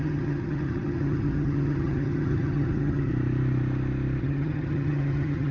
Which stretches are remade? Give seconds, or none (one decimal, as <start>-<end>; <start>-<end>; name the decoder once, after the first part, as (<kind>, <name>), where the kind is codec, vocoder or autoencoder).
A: 0.0-3.1 (vocoder, HiFi-GAN); 4.2-5.5